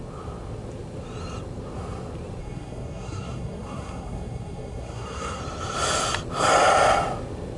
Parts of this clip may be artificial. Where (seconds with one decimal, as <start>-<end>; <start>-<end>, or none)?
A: 2.4-5.4